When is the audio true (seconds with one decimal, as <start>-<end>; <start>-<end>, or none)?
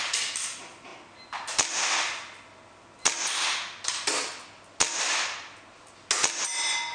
0.0-6.9